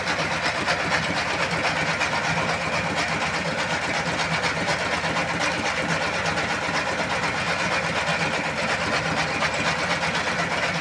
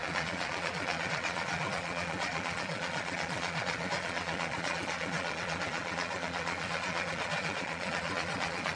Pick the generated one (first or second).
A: second